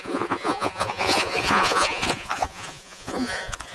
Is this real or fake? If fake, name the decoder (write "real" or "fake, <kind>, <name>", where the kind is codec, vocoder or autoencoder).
fake, vocoder, Vocos